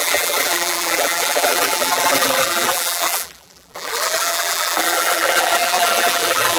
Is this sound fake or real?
fake